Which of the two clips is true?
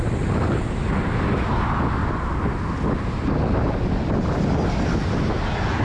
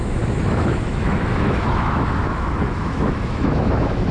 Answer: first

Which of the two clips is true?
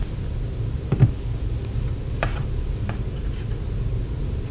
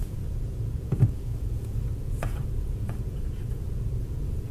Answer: first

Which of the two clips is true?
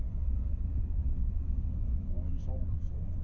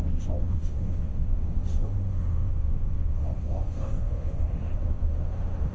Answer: first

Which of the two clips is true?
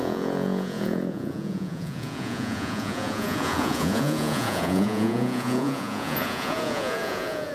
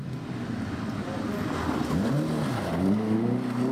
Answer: second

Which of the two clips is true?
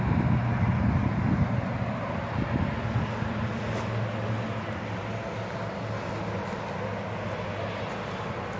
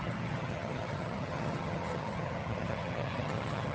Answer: first